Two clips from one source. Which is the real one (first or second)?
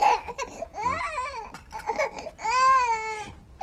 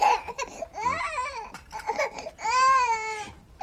first